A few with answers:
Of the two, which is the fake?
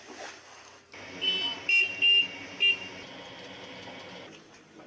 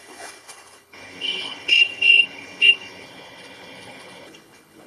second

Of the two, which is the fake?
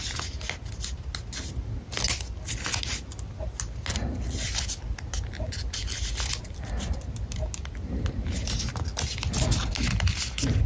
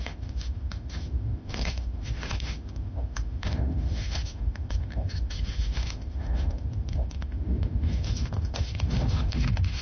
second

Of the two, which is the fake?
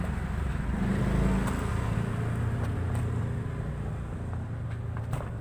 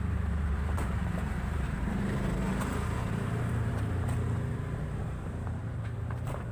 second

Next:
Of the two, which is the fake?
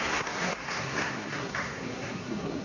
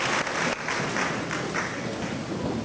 first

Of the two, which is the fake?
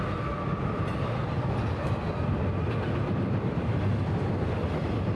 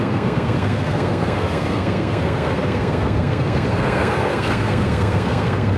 second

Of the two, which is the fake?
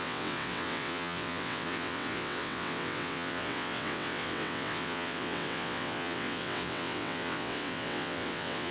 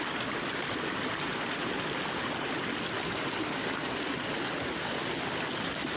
first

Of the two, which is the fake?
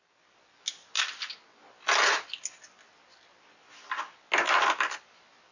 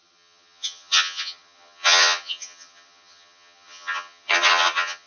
second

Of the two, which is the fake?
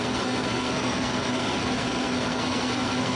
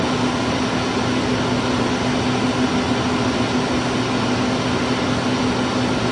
first